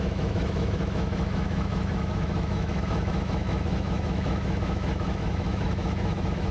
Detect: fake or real fake